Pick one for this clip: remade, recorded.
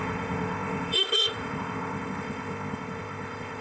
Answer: remade